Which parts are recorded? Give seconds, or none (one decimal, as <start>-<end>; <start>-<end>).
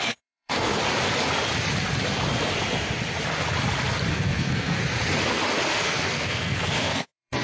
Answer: 0.7-4.1; 4.8-5.7